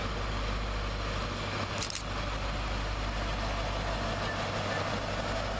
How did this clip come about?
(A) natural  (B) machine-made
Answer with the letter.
A